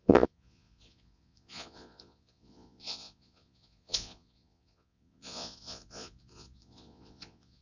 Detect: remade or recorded remade